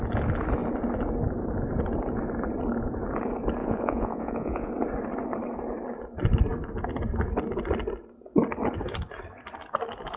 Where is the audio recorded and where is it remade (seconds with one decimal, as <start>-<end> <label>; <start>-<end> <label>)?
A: 0.0-3.6 recorded; 3.6-4.7 remade; 4.7-10.2 recorded